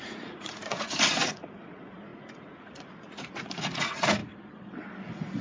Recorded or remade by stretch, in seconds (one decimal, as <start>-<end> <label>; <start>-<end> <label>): 0.0-4.2 remade; 4.2-5.0 recorded; 5.0-5.4 remade